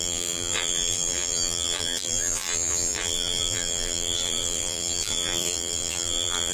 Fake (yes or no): yes